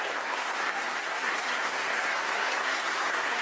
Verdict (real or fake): fake